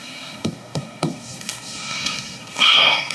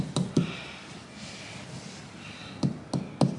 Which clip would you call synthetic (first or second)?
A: first